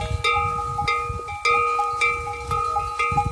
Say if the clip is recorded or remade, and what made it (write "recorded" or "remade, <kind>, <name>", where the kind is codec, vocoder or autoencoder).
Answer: recorded